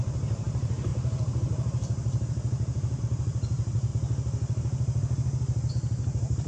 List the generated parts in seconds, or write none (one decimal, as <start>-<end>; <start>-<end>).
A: 0.0-3.9; 5.7-6.5